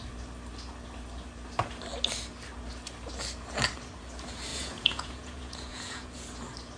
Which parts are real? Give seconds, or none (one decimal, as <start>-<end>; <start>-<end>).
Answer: 0.0-4.5; 6.2-6.8